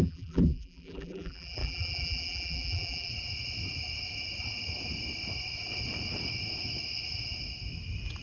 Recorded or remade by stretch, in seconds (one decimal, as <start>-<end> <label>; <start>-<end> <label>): 0.0-3.1 remade; 3.1-8.2 recorded